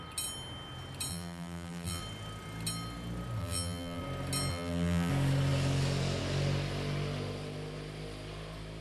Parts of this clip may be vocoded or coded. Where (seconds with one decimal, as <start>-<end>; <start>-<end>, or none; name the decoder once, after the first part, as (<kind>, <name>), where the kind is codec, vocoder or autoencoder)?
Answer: 1.1-2.0 (vocoder, BigVGAN v2); 3.4-4.0; 4.5-5.1